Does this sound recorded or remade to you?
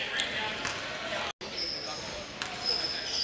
recorded